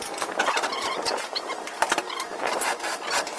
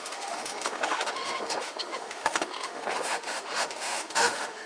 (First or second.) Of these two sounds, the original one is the first